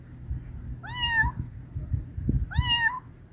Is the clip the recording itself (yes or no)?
yes